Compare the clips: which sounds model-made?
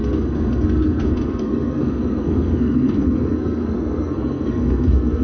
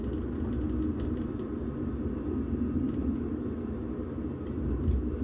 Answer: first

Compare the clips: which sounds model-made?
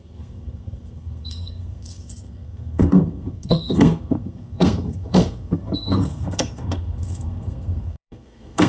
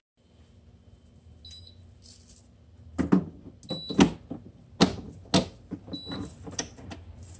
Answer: first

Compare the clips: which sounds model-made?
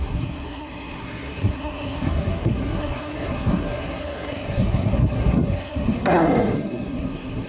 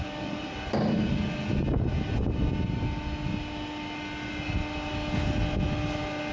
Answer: first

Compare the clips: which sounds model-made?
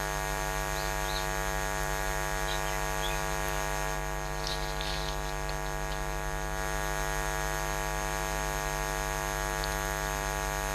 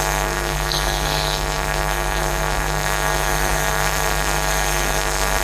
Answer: second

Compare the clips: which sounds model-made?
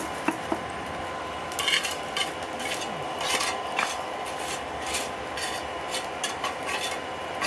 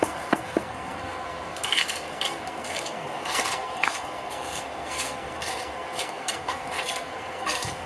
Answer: second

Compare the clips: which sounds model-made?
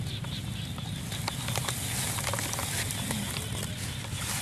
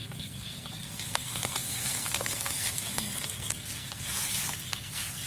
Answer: second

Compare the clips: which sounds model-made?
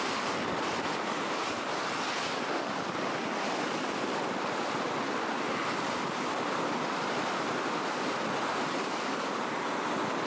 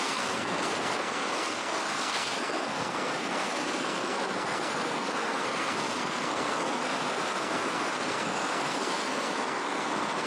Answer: second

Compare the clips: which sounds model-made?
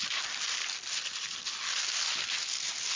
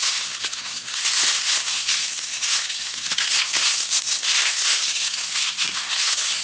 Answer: second